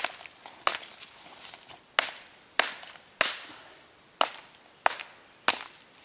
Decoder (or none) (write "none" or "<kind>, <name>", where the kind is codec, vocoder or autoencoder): none